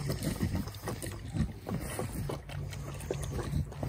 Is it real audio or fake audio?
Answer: real